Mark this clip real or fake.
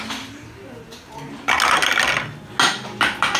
real